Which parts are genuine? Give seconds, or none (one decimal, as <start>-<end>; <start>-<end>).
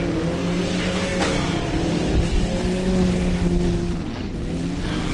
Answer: 0.0-5.1